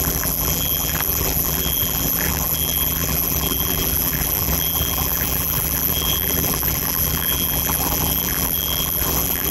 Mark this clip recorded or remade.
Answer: remade